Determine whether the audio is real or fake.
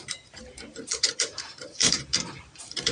fake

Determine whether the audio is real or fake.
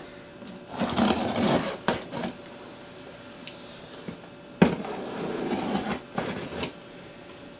real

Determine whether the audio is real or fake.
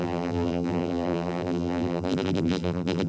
fake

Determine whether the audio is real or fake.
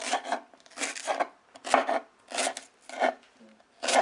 real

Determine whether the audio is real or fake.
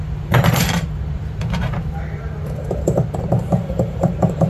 fake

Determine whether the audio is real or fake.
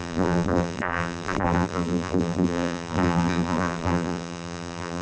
fake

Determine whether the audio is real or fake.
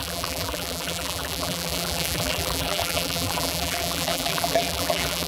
fake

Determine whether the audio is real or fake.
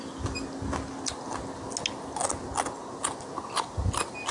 real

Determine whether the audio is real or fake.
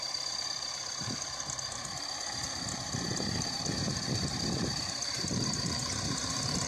fake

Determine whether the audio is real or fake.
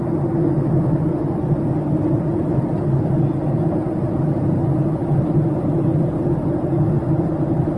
real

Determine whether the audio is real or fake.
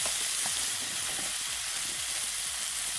real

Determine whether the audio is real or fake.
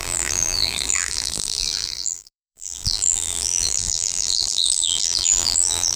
fake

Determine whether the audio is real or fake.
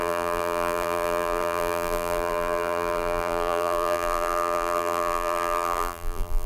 fake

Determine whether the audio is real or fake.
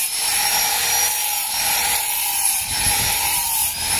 fake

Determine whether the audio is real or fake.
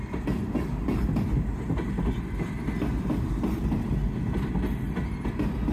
real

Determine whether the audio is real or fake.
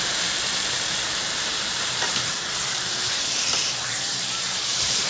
fake